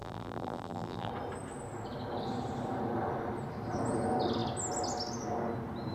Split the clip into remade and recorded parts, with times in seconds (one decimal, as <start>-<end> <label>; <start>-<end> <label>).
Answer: 0.0-1.1 remade; 1.1-5.9 recorded